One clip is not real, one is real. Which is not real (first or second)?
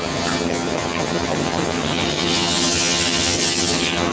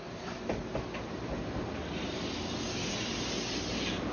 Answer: first